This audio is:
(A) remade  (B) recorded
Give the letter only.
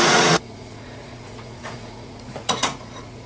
A